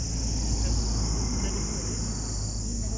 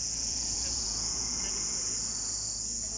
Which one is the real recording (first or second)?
first